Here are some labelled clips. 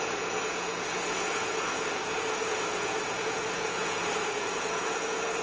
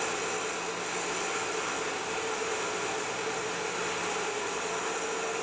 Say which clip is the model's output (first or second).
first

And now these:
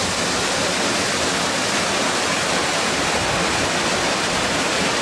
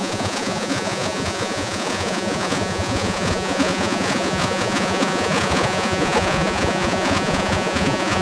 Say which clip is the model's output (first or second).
second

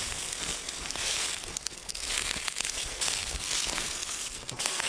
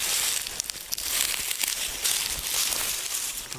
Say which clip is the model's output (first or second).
first